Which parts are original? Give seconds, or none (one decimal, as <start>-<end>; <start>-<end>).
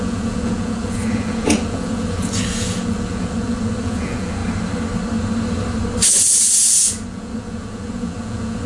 4.4-6.1